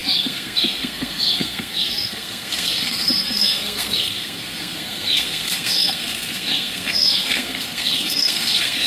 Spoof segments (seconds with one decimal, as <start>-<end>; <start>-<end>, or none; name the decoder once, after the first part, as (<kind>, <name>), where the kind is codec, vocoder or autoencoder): 0.0-8.9 (codec, SNAC)